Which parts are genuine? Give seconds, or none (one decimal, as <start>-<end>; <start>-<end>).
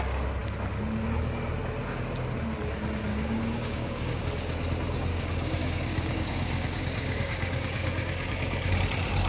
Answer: 0.0-3.1; 4.2-5.1; 8.7-9.3